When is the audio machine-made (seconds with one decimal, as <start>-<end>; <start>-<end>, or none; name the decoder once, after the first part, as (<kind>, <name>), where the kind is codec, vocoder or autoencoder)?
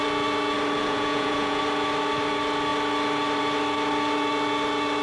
0.8-1.6 (vocoder, Vocos)